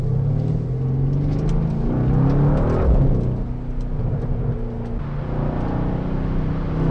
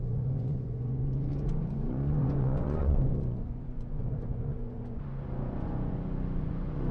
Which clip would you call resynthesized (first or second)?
second